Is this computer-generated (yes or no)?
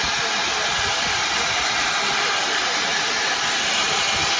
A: no